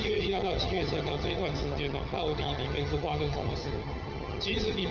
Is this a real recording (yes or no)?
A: no